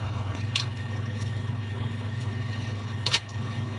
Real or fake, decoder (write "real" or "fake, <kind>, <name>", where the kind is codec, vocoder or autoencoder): fake, codec, HILCodec